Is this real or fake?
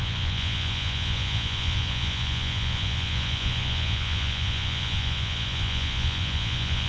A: fake